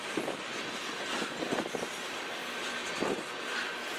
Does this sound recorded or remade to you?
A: recorded